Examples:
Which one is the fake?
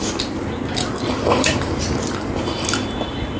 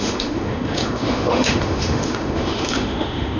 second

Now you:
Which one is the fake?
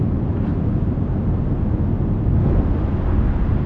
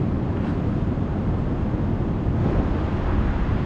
second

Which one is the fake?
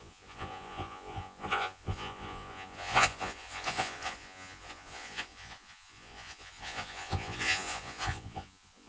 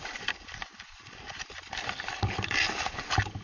first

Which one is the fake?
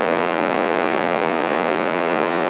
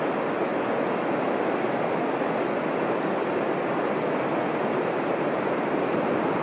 first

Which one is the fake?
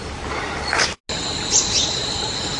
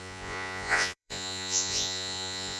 second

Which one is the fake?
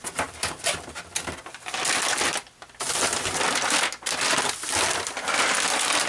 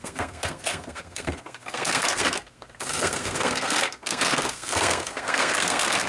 second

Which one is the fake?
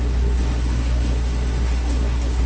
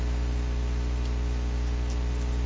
first